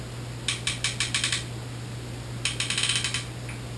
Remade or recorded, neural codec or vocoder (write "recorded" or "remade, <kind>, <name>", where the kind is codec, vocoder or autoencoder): recorded